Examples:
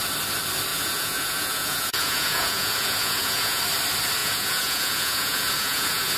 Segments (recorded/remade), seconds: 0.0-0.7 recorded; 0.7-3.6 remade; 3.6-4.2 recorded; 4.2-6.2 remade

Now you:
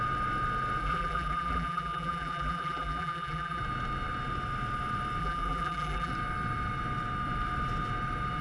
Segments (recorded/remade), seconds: 0.0-0.8 recorded; 0.8-3.6 remade; 3.6-5.2 recorded; 5.2-6.1 remade; 6.1-8.4 recorded

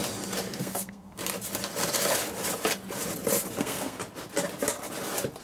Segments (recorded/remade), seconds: 0.0-0.6 recorded; 0.6-1.2 remade; 1.2-3.6 recorded; 3.6-4.0 remade; 4.0-5.4 recorded

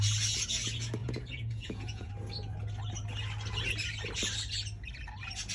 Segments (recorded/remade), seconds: 0.0-1.0 recorded; 1.0-2.1 remade; 2.1-5.5 recorded